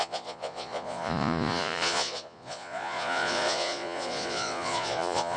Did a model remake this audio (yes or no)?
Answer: yes